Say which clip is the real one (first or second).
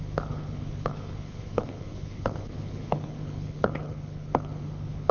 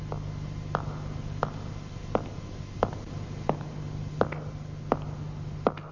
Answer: second